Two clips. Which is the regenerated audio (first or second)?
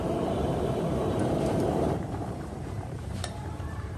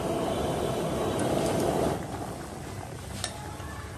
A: first